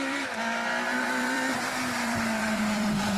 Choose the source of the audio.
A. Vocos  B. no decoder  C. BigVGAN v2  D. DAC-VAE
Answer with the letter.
C